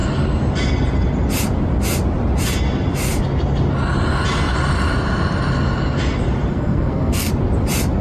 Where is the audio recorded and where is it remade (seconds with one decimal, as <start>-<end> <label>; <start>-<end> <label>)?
0.0-6.5 recorded; 6.5-7.3 remade; 7.3-8.0 recorded